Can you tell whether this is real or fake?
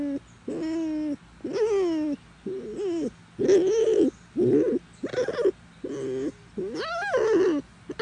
real